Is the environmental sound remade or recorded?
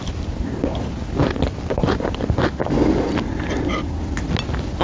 recorded